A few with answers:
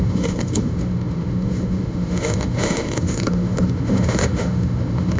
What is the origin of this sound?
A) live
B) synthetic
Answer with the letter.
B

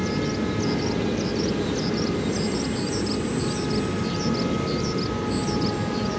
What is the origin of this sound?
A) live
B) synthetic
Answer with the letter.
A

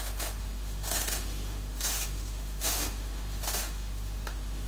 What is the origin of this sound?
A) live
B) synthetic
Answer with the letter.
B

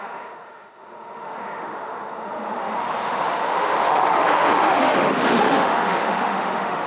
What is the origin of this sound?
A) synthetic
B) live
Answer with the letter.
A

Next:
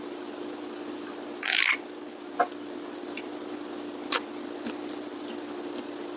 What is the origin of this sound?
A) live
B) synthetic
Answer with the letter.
A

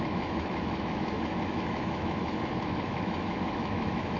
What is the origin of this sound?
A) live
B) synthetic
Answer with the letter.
B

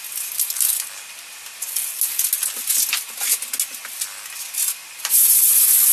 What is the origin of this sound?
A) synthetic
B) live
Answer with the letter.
B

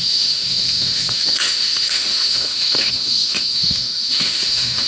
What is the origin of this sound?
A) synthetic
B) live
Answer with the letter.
A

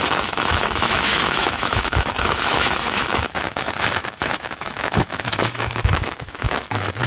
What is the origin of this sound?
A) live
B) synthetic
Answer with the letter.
B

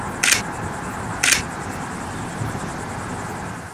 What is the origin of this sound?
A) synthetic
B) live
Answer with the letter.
B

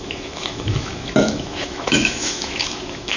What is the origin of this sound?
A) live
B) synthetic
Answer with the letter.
B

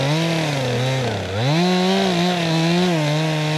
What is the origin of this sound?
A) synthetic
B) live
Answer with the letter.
B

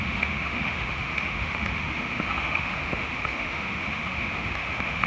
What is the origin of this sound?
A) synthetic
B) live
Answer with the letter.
A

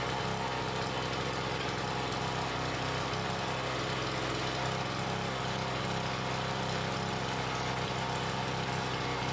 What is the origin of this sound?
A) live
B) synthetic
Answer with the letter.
A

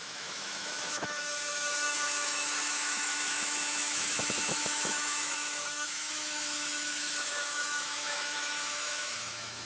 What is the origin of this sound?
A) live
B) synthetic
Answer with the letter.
B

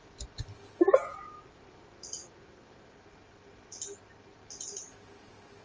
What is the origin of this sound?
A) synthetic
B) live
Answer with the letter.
B